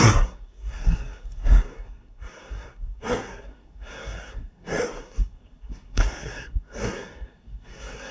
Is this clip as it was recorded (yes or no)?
no